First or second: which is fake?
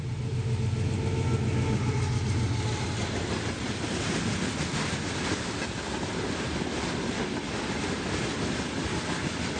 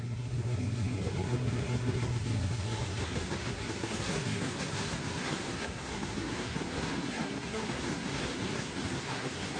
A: second